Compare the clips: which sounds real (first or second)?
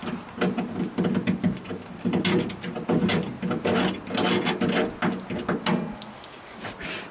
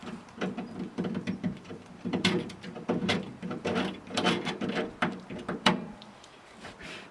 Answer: first